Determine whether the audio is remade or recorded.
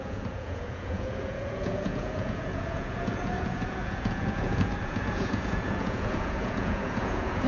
remade